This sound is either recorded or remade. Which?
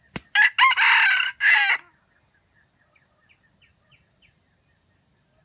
recorded